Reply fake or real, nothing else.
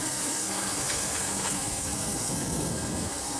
fake